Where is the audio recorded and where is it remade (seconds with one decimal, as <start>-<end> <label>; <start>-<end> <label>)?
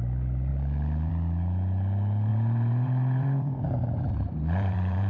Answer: 0.0-2.3 recorded; 2.3-5.1 remade